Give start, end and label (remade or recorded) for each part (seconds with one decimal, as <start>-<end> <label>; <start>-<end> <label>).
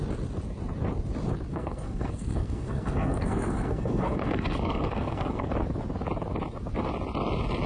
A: 0.0-1.5 recorded; 1.5-5.5 remade; 5.5-7.7 recorded